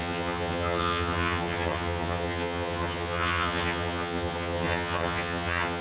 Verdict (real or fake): fake